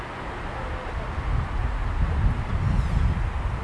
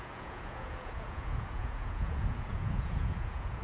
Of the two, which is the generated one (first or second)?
second